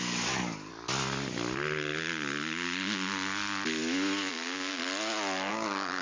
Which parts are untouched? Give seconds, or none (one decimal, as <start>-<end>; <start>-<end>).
0.7-4.3; 4.8-5.5